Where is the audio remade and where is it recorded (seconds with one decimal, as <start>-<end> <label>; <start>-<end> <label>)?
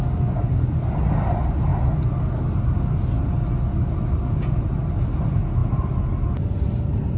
0.0-7.2 recorded